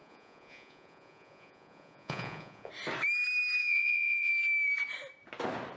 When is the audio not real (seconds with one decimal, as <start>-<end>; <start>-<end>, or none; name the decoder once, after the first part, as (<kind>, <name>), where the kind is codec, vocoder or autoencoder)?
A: 0.0-2.7 (vocoder, Vocos); 3.6-4.3